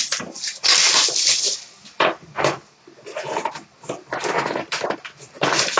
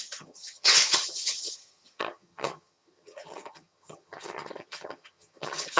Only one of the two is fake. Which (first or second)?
second